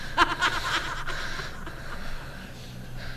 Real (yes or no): yes